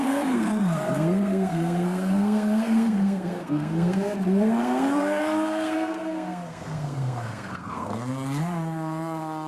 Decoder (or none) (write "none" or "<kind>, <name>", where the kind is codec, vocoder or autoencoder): codec, SNAC